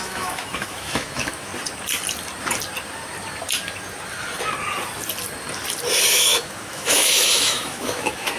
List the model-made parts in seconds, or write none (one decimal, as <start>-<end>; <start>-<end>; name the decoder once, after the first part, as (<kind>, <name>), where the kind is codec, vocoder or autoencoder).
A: 0.0-1.5 (autoencoder, DAC-VAE); 6.1-8.4